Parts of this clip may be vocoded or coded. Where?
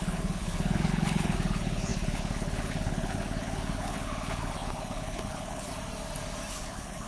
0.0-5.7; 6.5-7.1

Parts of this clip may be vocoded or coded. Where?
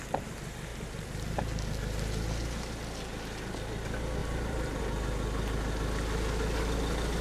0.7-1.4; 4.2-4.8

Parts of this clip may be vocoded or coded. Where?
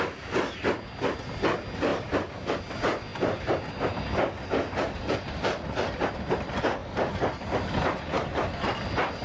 none